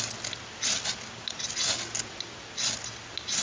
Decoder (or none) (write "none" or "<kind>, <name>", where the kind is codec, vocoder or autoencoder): none